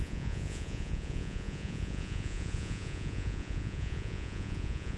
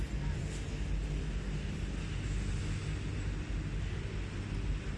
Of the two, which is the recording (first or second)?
second